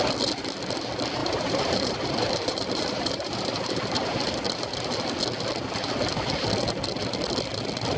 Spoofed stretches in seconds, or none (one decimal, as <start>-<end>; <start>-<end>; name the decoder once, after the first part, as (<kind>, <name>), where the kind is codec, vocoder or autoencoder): 1.2-4.3 (vocoder, BigVGAN v2)